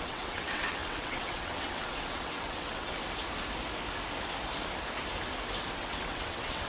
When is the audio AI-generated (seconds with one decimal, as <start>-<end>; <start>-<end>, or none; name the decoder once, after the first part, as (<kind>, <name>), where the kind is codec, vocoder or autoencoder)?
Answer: 0.0-3.0 (vocoder, WaveNeXt); 5.7-6.7